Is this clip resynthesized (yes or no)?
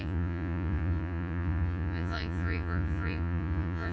yes